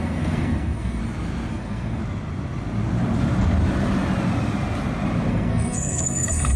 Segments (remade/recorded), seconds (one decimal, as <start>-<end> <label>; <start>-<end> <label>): 0.0-1.0 remade; 1.0-1.5 recorded; 1.5-2.0 remade; 2.0-5.3 recorded; 5.3-6.6 remade